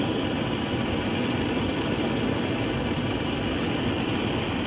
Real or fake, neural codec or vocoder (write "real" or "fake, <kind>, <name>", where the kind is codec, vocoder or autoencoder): real